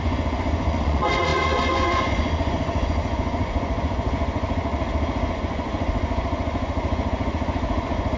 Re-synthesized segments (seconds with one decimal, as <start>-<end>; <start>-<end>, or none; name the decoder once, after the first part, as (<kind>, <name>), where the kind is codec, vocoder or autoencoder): 0.0-4.7 (vocoder, Vocos); 5.3-8.2